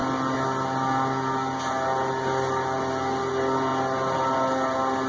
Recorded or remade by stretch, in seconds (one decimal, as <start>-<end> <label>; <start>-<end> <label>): 0.0-5.1 recorded